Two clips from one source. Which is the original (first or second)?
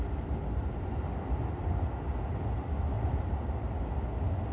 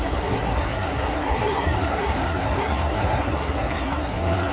first